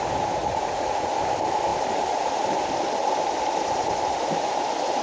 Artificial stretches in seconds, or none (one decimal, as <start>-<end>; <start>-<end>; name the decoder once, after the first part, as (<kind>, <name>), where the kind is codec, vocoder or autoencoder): 0.4-1.1 (vocoder, Vocos)